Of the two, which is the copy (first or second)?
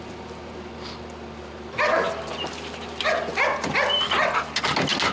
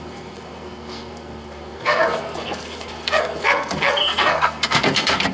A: second